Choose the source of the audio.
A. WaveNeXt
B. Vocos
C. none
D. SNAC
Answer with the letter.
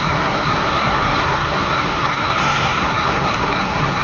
D